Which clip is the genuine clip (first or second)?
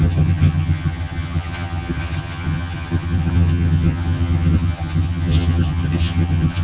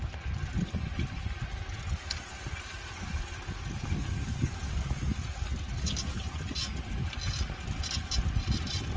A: second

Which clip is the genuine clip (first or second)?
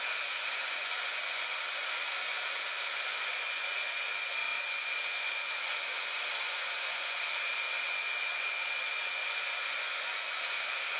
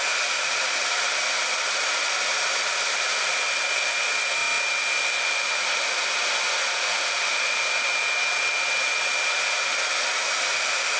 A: second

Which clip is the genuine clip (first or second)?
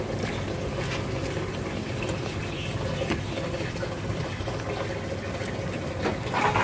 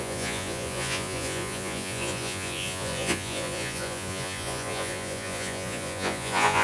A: first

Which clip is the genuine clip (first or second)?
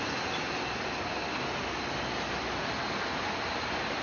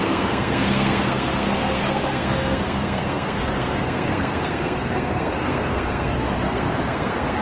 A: first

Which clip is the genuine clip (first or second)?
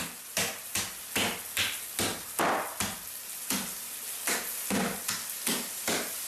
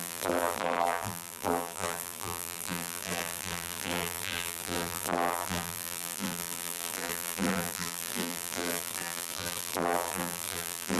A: first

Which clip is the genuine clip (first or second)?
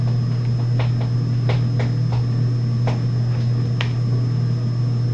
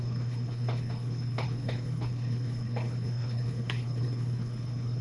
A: first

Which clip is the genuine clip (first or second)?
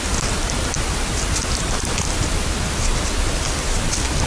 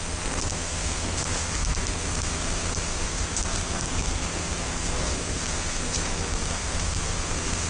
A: first